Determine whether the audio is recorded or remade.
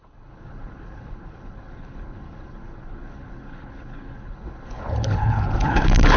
remade